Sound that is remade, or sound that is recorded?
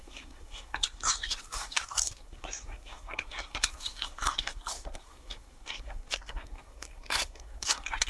remade